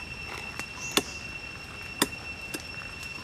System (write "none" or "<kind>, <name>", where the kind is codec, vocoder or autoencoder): none